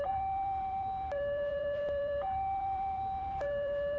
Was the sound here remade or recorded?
remade